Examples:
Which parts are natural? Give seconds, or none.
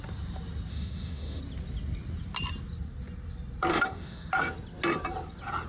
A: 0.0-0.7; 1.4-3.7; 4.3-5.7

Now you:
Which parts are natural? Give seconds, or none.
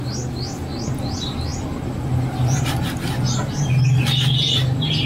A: 0.0-5.1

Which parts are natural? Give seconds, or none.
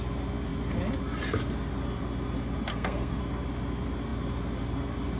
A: 0.0-2.7; 3.2-5.2